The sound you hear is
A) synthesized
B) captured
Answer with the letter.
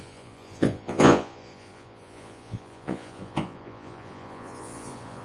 A